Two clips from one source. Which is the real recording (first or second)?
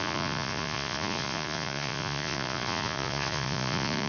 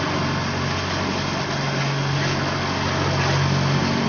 second